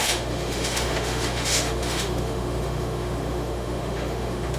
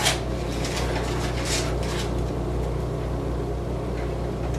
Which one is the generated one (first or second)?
first